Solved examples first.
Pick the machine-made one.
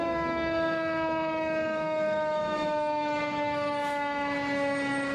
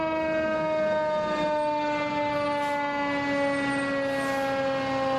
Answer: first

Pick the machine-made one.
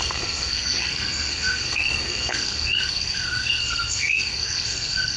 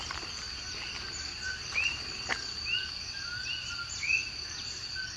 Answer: first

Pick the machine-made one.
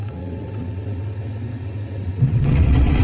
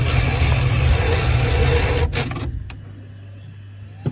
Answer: first